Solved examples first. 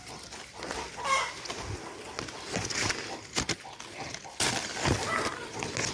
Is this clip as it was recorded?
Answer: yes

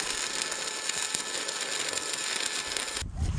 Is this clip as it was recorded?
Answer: yes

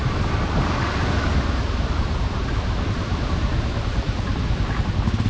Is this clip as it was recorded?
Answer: yes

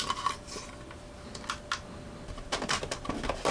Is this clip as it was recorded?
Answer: yes